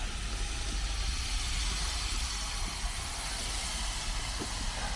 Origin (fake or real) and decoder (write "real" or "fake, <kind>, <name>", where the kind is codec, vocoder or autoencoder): real